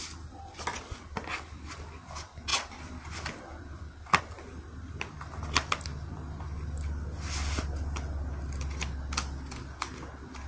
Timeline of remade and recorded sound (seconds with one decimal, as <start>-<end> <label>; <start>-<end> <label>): 0.0-10.5 recorded